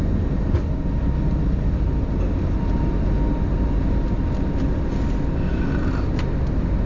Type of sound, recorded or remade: recorded